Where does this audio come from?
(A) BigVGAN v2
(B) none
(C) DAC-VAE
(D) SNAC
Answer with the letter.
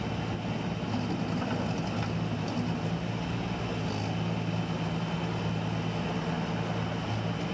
B